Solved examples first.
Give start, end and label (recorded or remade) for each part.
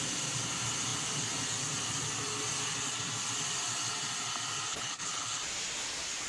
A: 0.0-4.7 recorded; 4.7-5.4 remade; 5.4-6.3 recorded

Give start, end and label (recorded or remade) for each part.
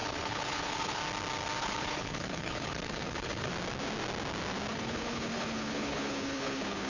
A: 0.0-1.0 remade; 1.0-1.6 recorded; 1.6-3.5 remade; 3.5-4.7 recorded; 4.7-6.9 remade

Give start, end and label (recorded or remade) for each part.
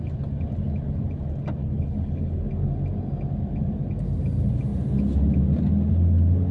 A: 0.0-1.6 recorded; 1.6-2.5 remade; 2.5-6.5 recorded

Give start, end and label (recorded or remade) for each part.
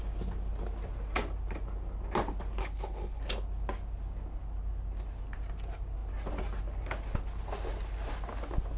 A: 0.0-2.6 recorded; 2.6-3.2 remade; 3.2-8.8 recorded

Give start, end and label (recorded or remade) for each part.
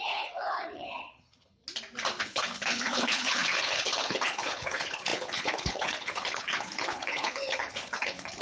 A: 0.0-1.6 remade; 1.6-2.2 recorded; 2.2-8.4 remade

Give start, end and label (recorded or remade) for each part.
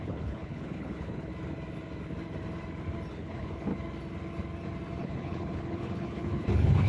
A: 0.0-1.3 remade; 1.3-3.1 recorded; 3.1-3.7 remade; 3.7-5.0 recorded; 5.0-6.9 remade